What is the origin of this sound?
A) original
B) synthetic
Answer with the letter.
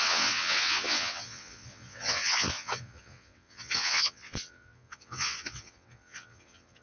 B